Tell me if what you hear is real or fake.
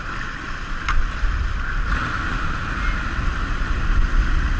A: real